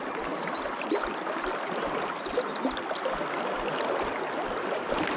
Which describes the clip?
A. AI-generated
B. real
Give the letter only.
B